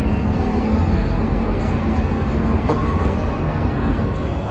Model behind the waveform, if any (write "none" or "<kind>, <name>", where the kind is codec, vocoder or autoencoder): codec, SNAC